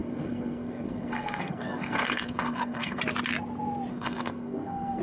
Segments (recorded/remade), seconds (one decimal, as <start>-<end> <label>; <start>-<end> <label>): 0.0-3.0 remade; 3.0-3.9 recorded; 3.9-5.0 remade